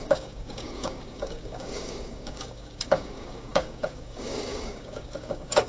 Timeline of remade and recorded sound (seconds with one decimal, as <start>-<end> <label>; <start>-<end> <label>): 0.0-5.7 remade

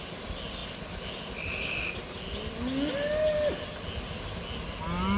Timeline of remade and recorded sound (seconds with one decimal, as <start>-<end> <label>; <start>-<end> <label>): 0.0-5.2 recorded